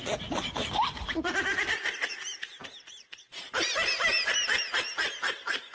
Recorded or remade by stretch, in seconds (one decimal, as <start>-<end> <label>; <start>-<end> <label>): 0.0-4.3 remade; 4.3-5.0 recorded; 5.0-5.7 remade